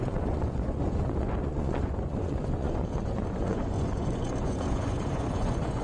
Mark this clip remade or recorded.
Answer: remade